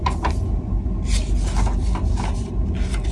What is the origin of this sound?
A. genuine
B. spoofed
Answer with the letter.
A